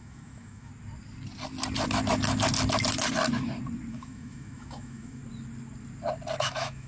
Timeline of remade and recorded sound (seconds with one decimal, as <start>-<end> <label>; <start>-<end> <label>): 0.0-0.7 remade; 0.7-3.9 recorded; 3.9-5.2 remade; 5.2-6.4 recorded; 6.4-6.9 remade